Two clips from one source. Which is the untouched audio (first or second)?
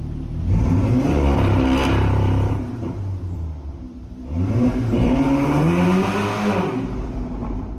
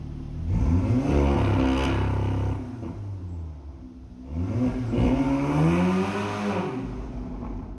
second